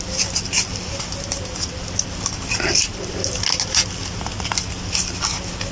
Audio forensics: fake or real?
real